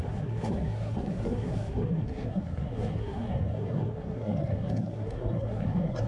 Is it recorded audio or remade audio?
remade